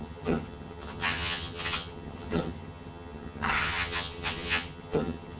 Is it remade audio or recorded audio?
remade